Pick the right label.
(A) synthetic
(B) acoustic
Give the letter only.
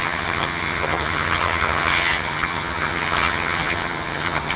A